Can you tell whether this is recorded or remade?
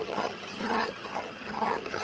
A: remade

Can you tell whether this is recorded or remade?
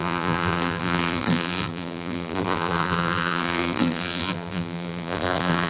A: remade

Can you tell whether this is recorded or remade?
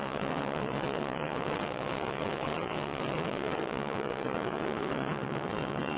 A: remade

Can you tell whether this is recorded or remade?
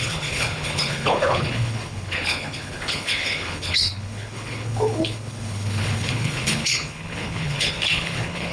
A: remade